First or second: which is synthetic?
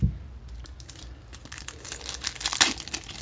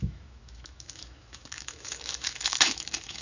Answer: second